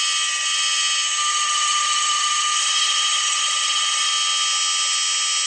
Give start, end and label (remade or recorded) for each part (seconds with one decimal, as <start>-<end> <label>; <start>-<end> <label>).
0.0-1.3 recorded; 1.3-4.1 remade; 4.1-5.5 recorded